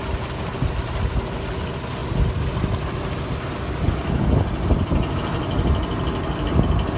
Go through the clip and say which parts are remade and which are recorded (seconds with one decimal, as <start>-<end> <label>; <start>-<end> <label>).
0.0-7.0 recorded